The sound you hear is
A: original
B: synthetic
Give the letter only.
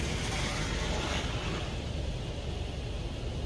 A